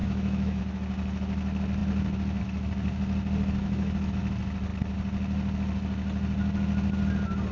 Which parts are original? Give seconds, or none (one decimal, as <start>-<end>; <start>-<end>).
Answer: 0.6-3.6; 4.2-7.5